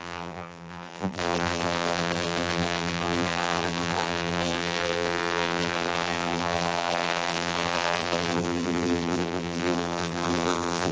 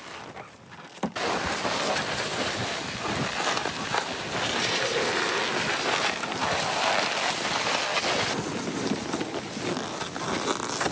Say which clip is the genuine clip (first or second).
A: second